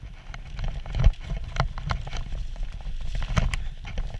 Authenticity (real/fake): real